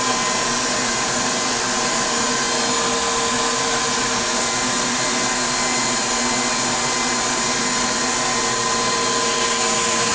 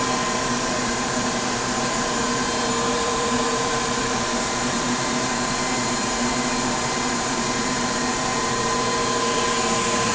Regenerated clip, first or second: second